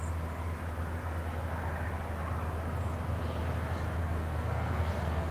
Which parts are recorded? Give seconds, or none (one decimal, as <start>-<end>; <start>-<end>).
0.0-4.0